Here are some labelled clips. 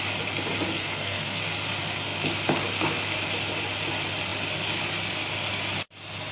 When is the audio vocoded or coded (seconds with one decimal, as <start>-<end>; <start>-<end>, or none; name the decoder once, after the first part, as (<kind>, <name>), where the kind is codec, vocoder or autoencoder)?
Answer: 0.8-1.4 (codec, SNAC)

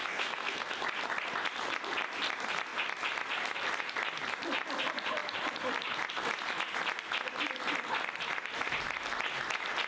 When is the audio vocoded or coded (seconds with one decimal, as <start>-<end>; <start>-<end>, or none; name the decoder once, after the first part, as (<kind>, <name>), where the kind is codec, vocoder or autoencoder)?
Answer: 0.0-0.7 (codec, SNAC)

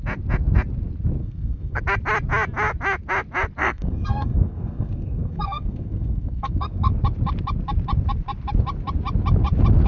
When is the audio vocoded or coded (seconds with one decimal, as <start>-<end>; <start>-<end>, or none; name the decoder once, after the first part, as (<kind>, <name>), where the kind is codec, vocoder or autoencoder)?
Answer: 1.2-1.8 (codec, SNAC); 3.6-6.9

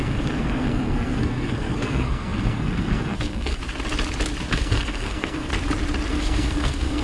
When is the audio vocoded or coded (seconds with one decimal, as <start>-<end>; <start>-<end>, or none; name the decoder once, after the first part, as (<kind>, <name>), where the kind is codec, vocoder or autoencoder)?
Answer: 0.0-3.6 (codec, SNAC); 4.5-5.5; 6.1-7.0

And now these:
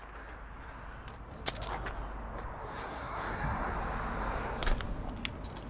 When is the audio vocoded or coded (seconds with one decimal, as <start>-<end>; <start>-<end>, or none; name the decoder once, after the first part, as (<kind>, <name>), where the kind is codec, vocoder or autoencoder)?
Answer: 2.6-3.7 (codec, SNAC)

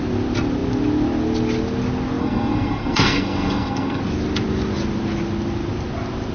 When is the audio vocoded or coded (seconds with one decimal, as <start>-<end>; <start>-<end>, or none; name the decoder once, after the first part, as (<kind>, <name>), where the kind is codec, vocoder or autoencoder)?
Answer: 2.2-4.0 (codec, SNAC)